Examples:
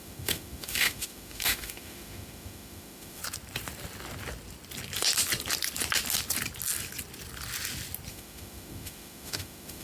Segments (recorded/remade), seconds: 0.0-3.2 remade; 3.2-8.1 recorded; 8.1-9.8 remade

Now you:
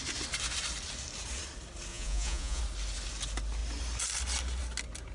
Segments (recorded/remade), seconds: 0.0-1.9 recorded; 1.9-2.6 remade; 2.6-5.1 recorded

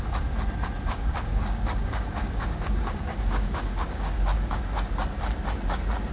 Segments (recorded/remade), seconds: 0.0-0.9 recorded; 0.9-4.6 remade; 4.6-6.1 recorded

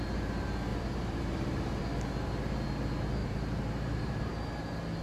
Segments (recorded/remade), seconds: 0.0-0.7 recorded; 0.7-1.8 remade; 1.8-3.2 recorded; 3.2-4.3 remade; 4.3-5.0 recorded

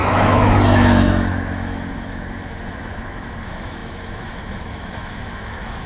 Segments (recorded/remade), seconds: 0.0-5.9 remade

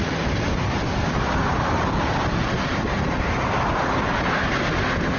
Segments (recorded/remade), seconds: 0.0-5.2 recorded